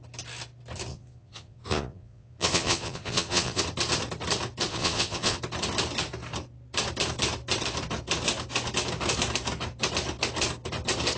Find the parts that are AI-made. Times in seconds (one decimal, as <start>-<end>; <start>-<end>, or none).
0.9-3.6; 4.7-5.4